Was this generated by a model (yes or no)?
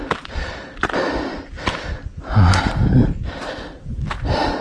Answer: no